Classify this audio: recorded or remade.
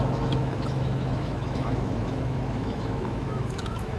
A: remade